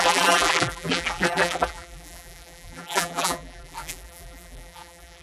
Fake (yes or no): yes